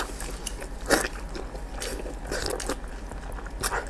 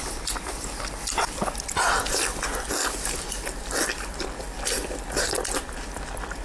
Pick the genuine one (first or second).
first